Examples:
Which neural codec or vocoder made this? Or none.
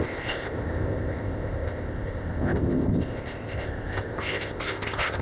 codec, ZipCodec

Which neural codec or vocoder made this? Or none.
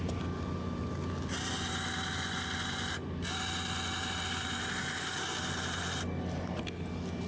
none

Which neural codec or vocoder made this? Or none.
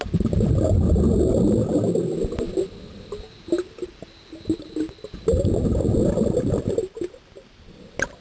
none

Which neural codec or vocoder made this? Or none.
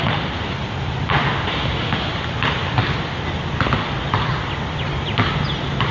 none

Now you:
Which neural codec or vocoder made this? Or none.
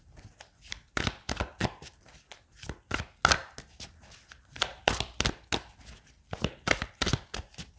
none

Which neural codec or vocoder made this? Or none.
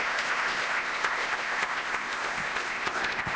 codec, ZipCodec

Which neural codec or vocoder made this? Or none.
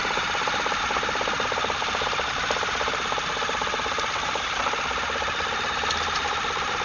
none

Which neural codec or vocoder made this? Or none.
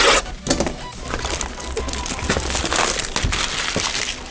none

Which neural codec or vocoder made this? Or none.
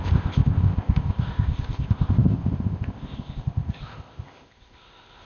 codec, ZipCodec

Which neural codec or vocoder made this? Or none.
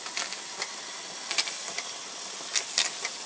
none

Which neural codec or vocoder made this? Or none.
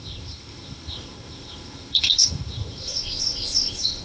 codec, ZipCodec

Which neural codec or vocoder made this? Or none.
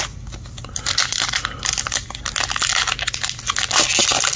none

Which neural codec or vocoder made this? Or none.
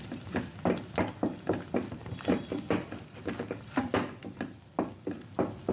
none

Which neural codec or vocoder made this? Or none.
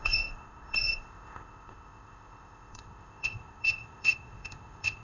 codec, ZipCodec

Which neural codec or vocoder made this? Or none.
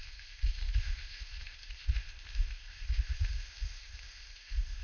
codec, ZipCodec